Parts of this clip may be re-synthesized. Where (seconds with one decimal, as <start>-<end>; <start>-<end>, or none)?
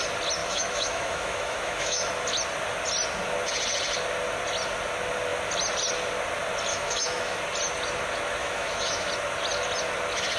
0.4-2.1; 6.7-7.4; 8.4-9.1